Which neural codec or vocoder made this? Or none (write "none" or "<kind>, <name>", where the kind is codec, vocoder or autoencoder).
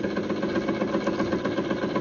none